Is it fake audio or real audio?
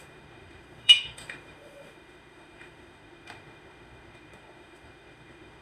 fake